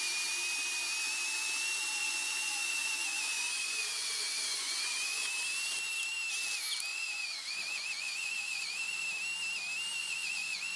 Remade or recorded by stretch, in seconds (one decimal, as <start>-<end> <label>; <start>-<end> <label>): 0.0-2.0 recorded; 2.0-5.3 remade; 5.3-6.9 recorded; 6.9-9.0 remade; 9.0-10.0 recorded; 10.0-10.8 remade